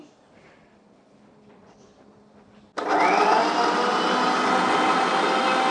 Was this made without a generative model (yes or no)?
yes